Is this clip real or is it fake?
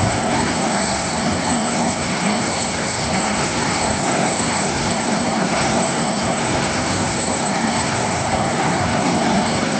fake